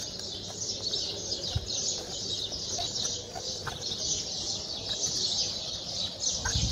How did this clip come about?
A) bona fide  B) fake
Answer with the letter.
A